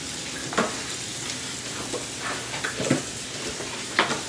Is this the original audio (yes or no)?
yes